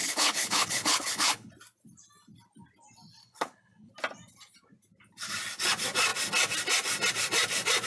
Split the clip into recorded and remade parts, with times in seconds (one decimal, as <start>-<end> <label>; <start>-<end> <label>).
0.0-1.5 remade; 1.5-3.2 recorded; 3.2-3.9 remade; 3.9-7.9 recorded